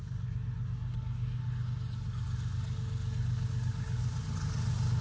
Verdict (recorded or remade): recorded